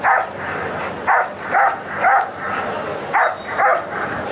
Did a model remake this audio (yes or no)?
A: no